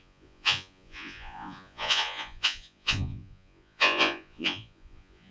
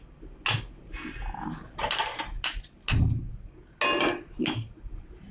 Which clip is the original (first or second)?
second